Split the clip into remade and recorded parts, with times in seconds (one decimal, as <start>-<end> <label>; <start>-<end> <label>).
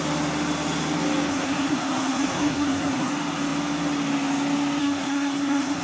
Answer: 0.0-1.3 recorded; 1.3-3.1 remade; 3.1-4.8 recorded; 4.8-5.8 remade